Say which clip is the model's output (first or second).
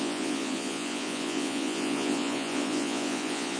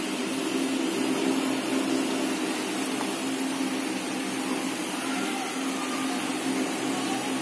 first